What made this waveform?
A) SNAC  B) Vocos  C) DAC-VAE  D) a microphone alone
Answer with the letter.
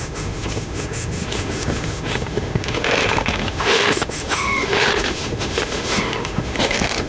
C